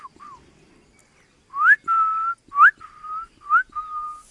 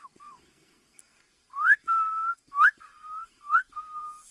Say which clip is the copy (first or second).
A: second